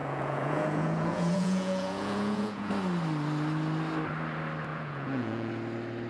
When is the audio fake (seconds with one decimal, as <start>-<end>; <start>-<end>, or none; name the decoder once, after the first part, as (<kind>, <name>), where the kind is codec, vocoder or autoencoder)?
0.0-2.7 (vocoder, Vocos); 4.7-5.5